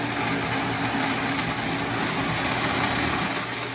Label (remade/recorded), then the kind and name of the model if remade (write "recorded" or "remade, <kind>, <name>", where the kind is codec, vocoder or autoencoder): recorded